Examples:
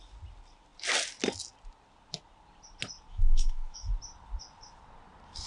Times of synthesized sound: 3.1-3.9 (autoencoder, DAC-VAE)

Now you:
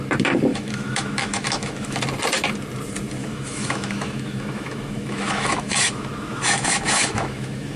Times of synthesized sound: 0.5-2.0 (autoencoder, DAC-VAE); 3.2-7.8

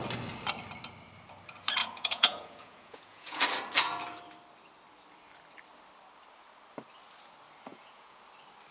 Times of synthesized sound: 1.8-3.4 (vocoder, Vocos); 7.7-8.2

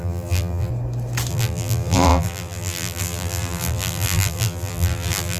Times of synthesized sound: 0.0-0.7 (vocoder, BigVGAN v2); 1.3-5.4

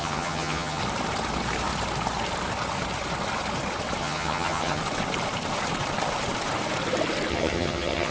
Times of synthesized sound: 0.0-0.8 (vocoder, HiFi-GAN); 4.0-4.8; 7.3-8.1